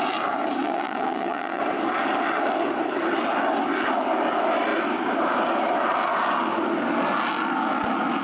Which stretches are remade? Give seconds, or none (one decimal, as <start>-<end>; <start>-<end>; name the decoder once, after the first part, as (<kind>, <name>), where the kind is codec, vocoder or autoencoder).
0.6-1.6 (vocoder, WaveNeXt)